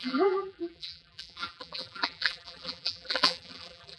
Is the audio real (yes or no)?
no